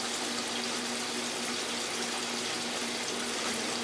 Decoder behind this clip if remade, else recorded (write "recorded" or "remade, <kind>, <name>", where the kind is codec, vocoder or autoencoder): recorded